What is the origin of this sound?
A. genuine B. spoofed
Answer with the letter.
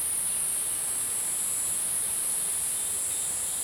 A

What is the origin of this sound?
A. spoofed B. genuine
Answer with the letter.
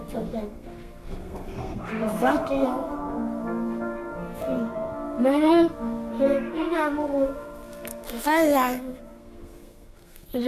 A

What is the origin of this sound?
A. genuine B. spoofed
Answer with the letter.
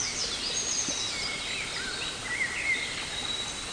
A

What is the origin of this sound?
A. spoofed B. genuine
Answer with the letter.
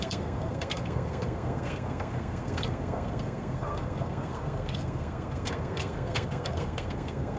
A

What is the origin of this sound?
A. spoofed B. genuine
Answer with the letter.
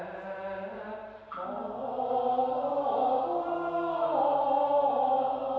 B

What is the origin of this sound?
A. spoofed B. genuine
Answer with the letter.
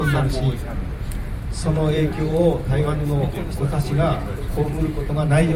A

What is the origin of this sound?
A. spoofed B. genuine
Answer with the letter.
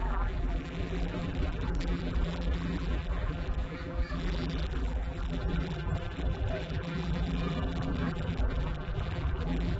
A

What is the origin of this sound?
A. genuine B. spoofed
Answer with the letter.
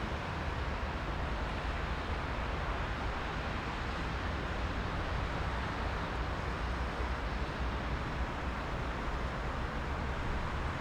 A